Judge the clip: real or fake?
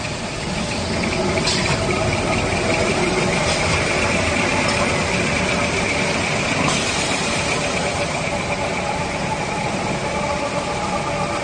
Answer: fake